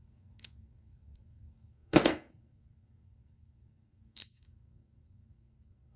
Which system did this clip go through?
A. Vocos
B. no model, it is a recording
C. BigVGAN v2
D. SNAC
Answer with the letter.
D